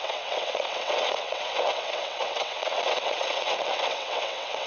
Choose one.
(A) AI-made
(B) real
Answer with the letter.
A